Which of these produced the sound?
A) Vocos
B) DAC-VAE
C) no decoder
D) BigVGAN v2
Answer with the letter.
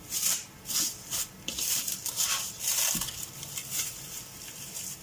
C